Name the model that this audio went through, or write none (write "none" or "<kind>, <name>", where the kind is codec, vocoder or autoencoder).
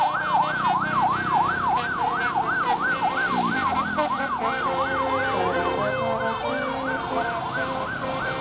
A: none